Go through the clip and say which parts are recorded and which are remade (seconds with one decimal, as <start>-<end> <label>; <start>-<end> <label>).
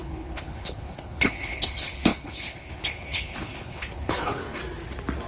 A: 0.0-4.6 remade; 4.6-5.3 recorded